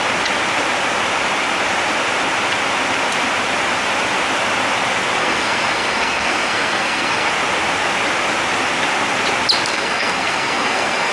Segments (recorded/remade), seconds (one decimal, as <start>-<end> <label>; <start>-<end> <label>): 0.0-5.2 recorded; 5.2-7.3 remade; 7.3-9.7 recorded; 9.7-11.1 remade

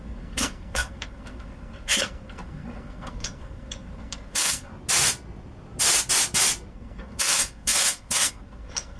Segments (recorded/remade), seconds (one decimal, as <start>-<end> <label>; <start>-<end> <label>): 0.0-4.7 remade; 4.7-6.7 recorded; 6.7-9.0 remade

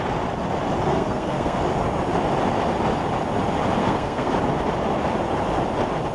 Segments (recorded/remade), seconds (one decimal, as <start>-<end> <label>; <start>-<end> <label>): 0.0-0.9 recorded; 0.9-1.6 remade; 1.6-3.8 recorded; 3.8-4.3 remade; 4.3-6.1 recorded